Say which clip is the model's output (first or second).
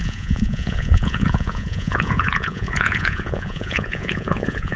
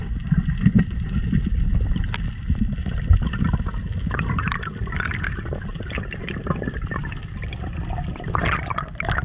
first